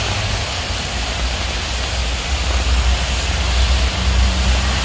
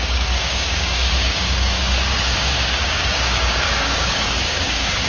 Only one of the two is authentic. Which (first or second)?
first